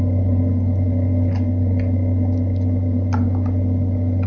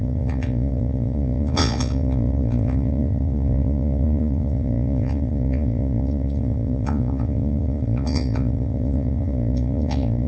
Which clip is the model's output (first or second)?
second